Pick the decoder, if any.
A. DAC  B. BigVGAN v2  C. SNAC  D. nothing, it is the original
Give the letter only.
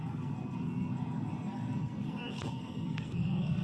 C